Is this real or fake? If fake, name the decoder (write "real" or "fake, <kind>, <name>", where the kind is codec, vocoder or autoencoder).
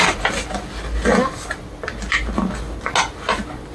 real